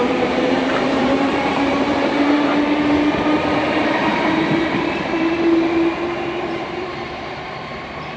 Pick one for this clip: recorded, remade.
remade